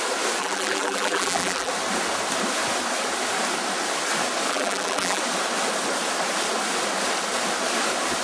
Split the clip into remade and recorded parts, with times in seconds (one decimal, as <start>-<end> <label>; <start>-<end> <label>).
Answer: 0.0-0.4 recorded; 0.4-1.7 remade; 1.7-4.5 recorded; 4.5-5.2 remade; 5.2-8.2 recorded